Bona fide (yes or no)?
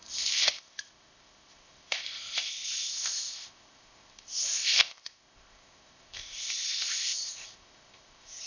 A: no